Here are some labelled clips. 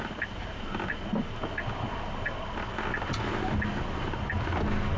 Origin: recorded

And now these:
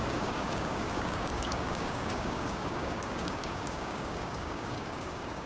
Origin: remade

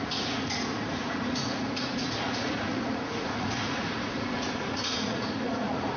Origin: remade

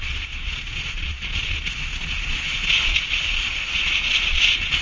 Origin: remade